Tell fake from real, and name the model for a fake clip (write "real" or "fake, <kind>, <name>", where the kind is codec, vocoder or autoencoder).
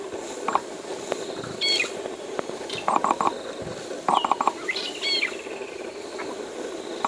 real